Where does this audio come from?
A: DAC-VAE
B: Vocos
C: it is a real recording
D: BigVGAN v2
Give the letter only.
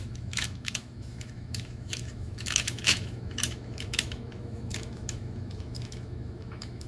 A